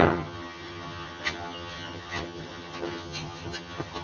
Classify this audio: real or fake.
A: fake